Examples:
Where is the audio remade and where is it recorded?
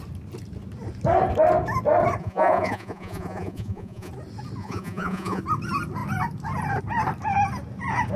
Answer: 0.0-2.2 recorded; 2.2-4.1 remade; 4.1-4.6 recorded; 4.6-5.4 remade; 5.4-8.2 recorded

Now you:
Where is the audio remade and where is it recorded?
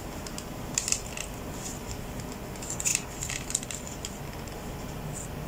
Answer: 0.0-5.5 recorded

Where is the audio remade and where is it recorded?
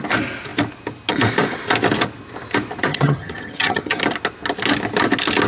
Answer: 0.0-2.9 recorded; 2.9-4.0 remade; 4.0-5.5 recorded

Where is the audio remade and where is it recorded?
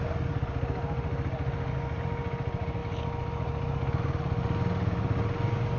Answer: 0.0-5.8 recorded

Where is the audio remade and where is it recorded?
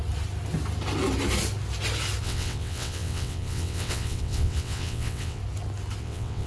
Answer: 0.0-2.2 recorded; 2.2-5.4 remade; 5.4-6.0 recorded; 6.0-6.5 remade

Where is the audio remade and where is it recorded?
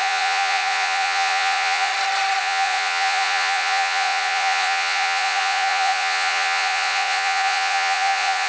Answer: 0.0-1.9 remade; 1.9-2.4 recorded; 2.4-8.5 remade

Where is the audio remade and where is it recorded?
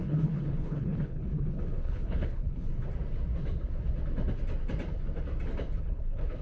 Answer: 0.0-2.7 remade; 2.7-5.8 recorded; 5.8-6.4 remade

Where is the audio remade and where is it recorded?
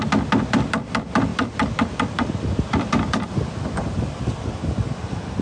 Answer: 0.0-1.3 recorded; 1.3-4.5 remade; 4.5-5.4 recorded